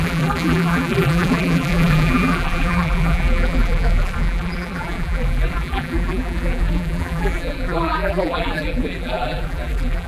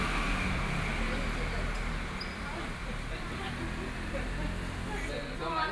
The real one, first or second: second